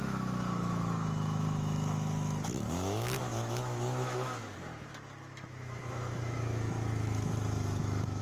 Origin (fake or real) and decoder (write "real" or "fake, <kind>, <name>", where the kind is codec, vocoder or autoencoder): fake, autoencoder, DAC-VAE